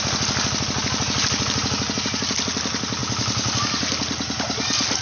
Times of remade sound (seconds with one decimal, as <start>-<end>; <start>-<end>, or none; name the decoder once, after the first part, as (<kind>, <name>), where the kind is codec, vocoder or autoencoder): none